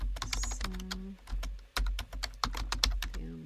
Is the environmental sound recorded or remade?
recorded